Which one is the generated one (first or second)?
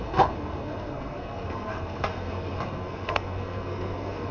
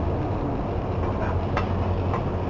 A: first